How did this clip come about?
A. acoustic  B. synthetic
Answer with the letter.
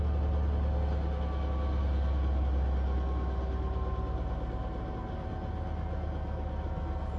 A